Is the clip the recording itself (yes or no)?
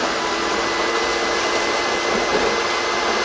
yes